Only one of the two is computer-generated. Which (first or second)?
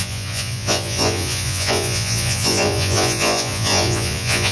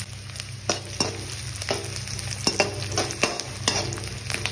first